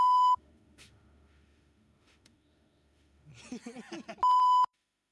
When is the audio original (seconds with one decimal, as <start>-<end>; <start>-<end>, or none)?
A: 3.3-4.4